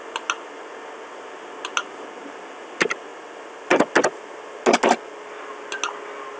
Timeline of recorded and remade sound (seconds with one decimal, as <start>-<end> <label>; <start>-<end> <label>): 0.0-6.4 recorded